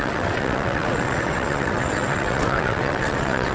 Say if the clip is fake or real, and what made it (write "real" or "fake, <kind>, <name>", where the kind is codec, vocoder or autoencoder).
fake, vocoder, WaveNeXt